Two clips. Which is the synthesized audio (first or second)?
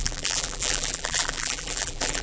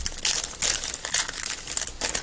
first